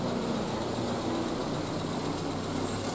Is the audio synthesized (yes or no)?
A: no